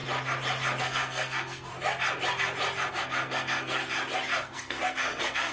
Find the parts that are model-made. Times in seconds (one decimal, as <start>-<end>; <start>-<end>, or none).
0.8-1.7; 2.9-3.8; 4.4-5.5